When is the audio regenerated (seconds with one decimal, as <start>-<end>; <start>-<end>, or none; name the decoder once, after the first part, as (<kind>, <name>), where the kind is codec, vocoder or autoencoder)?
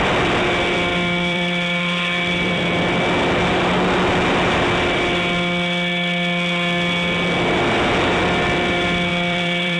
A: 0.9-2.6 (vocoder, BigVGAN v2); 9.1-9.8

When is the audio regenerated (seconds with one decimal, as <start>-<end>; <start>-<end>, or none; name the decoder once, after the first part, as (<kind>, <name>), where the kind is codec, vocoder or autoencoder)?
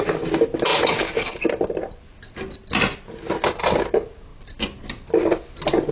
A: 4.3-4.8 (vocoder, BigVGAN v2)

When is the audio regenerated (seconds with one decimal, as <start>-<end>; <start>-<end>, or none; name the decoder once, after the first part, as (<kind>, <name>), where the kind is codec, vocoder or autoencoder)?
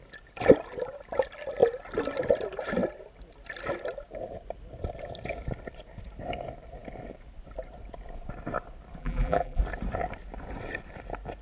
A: 9.0-9.6 (vocoder, BigVGAN v2)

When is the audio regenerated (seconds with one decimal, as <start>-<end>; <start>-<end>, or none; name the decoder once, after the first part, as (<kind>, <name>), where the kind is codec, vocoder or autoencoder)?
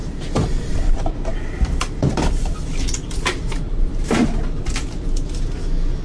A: 0.0-0.6 (vocoder, BigVGAN v2)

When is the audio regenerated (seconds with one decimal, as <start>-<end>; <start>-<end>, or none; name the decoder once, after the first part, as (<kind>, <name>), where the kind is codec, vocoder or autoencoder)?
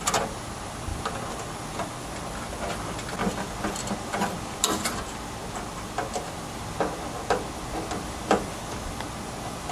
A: none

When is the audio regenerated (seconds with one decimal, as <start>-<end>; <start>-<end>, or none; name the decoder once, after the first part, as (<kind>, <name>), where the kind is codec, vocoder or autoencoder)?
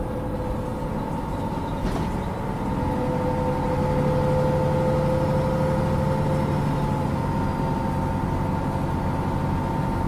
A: none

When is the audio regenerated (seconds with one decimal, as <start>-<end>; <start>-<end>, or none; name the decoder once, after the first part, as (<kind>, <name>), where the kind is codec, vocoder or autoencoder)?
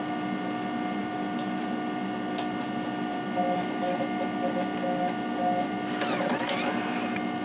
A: 1.0-1.6 (vocoder, BigVGAN v2)